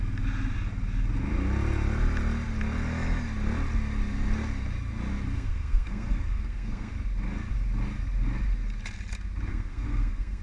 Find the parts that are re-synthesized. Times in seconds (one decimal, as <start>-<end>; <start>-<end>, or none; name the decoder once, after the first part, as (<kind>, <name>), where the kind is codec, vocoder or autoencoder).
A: 5.3-6.9 (codec, SNAC); 9.5-10.4